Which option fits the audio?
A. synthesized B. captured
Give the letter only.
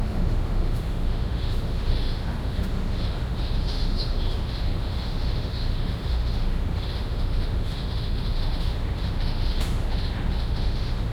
A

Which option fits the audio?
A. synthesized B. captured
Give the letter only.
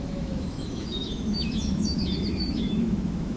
A